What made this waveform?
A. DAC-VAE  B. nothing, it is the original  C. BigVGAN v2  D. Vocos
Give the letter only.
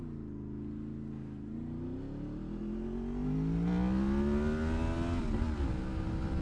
B